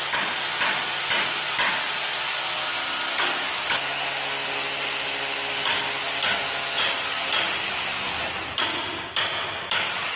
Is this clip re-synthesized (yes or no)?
no